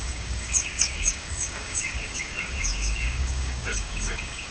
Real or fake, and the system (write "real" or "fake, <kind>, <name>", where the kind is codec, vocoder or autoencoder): fake, codec, DAC